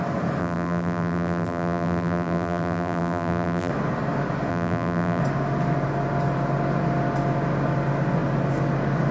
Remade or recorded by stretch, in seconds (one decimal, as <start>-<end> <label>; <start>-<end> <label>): 0.0-0.4 recorded; 0.4-3.7 remade; 3.7-4.5 recorded; 4.5-5.2 remade; 5.2-9.1 recorded